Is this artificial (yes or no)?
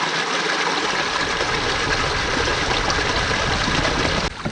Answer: no